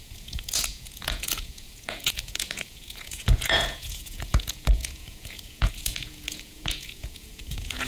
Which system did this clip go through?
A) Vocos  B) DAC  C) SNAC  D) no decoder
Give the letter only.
A